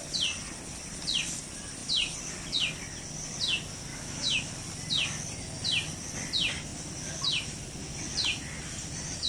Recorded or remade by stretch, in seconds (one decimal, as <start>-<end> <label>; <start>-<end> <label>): 0.0-3.9 recorded; 3.9-4.5 remade; 4.5-9.3 recorded